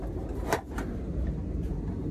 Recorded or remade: remade